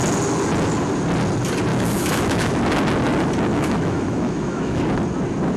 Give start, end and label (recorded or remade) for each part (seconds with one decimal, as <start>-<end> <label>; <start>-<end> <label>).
0.0-1.7 recorded; 1.7-2.5 remade; 2.5-3.5 recorded; 3.5-4.8 remade; 4.8-5.6 recorded